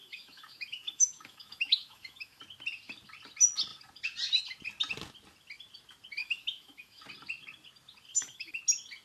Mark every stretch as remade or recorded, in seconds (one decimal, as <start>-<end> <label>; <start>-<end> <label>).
0.0-2.4 remade; 2.4-6.2 recorded; 6.2-7.0 remade; 7.0-8.1 recorded; 8.1-8.6 remade; 8.6-9.0 recorded